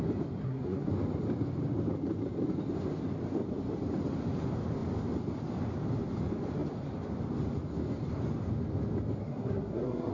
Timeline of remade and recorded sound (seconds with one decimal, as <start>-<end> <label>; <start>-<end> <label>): 0.0-0.4 recorded; 0.4-0.9 remade; 0.9-9.2 recorded; 9.2-10.1 remade